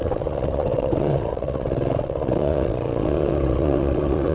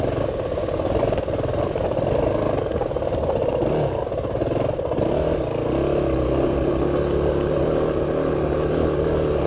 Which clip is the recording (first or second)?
second